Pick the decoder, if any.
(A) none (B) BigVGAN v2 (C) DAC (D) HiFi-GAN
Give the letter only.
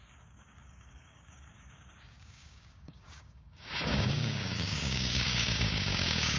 C